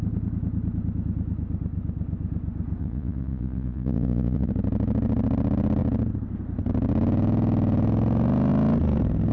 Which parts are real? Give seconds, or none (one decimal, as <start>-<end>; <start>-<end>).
0.0-2.8; 4.5-9.3